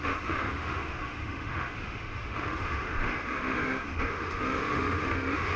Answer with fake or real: fake